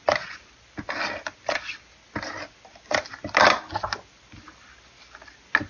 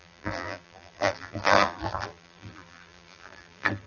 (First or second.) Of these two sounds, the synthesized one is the second